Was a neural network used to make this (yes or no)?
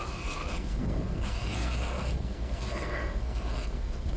yes